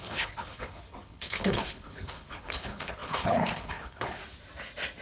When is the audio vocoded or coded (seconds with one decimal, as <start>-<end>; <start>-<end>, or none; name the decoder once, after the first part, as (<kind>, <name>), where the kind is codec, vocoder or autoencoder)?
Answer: 0.0-4.2 (codec, HILCodec)